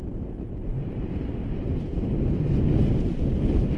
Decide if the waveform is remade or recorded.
recorded